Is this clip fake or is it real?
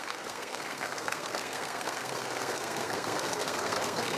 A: fake